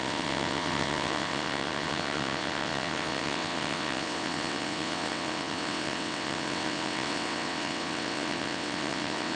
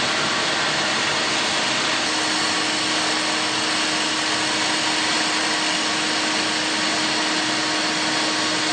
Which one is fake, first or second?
first